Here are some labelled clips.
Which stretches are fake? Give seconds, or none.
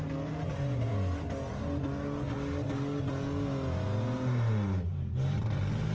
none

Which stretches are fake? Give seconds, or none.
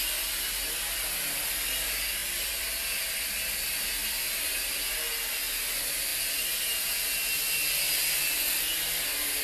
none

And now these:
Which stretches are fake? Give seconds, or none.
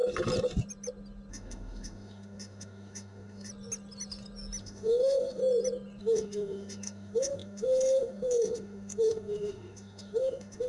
1.3-3.5 (autoencoder, DAC-VAE); 4.6-5.4; 6.0-10.7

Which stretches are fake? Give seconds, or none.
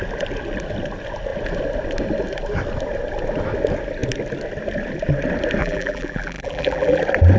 5.6-7.0 (vocoder, BigVGAN v2)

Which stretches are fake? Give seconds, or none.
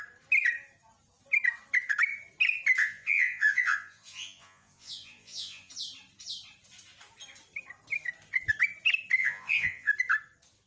2.8-5.7 (vocoder, Vocos); 9.2-9.9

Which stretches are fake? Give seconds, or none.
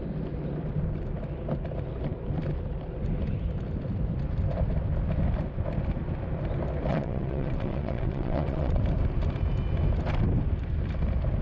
6.9-8.8 (vocoder, WaveNeXt)